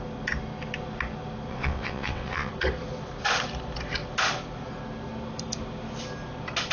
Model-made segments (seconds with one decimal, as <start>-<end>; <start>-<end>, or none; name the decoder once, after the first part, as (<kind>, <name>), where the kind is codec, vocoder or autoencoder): 1.5-2.5 (vocoder, WaveNeXt)